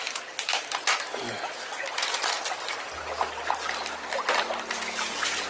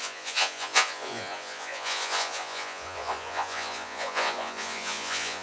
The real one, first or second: first